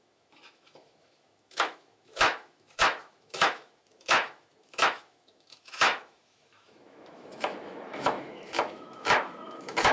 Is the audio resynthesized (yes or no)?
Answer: yes